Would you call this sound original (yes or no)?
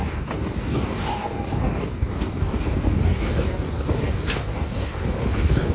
no